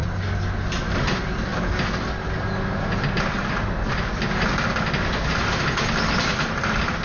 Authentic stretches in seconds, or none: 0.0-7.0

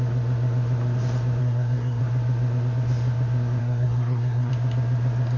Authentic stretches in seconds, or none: 0.0-1.4; 2.0-3.6; 4.5-5.4

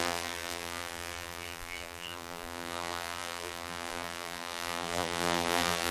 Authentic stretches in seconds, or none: none

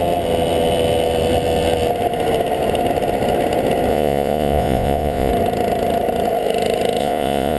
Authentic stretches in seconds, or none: 0.0-3.9; 5.3-7.0

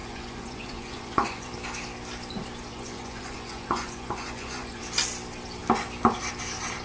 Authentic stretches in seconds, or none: 1.5-2.7; 4.8-6.8

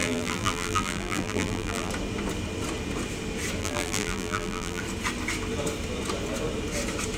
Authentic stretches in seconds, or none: 1.9-3.6; 4.8-7.2

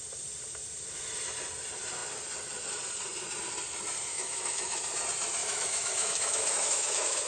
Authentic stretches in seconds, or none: 0.0-4.1; 4.8-5.4

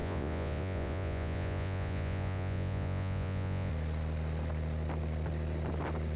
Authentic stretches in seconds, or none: 3.7-6.2